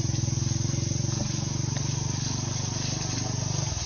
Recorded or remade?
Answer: recorded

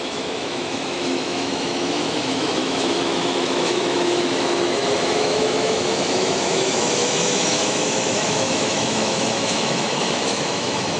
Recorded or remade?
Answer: remade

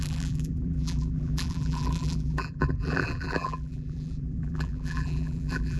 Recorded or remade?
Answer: remade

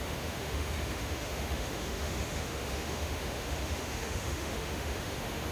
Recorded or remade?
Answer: remade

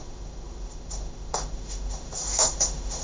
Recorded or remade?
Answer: remade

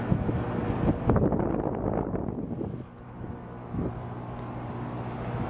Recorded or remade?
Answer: recorded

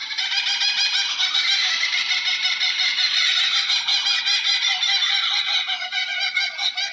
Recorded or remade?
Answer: recorded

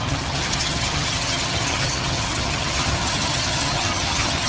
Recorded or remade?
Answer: remade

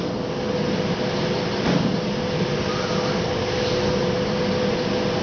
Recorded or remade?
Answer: recorded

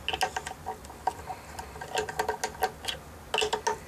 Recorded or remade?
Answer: recorded